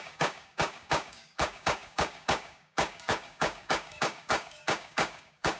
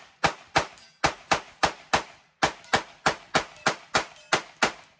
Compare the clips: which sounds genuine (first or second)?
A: second